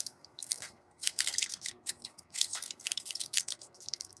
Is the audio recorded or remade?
remade